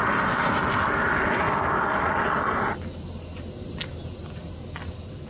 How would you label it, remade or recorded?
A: recorded